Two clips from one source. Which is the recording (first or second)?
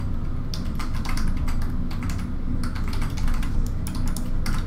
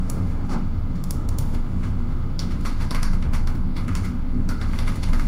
first